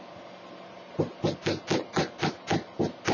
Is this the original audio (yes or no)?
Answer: yes